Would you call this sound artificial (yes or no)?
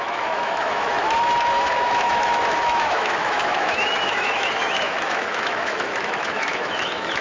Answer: yes